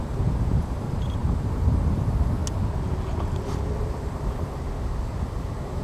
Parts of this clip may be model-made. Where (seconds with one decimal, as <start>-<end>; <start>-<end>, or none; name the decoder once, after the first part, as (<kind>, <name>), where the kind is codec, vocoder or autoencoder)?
0.0-2.4 (vocoder, BigVGAN v2); 4.0-5.8